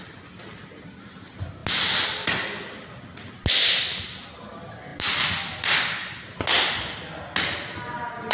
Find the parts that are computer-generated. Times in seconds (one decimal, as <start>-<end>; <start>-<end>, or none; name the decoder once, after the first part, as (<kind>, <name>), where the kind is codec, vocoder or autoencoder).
none